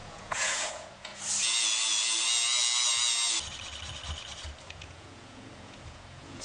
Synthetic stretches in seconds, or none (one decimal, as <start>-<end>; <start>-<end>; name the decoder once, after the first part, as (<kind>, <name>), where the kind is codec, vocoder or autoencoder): 0.0-1.1 (vocoder, Vocos); 4.7-6.4